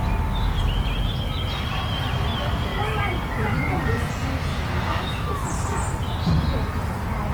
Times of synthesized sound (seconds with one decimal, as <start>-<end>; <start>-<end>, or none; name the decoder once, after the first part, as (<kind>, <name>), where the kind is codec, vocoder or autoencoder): 4.5-5.3 (autoencoder, DAC-VAE)